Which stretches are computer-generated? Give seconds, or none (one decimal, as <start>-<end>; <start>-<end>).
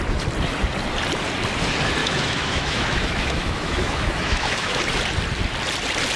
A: 2.0-4.8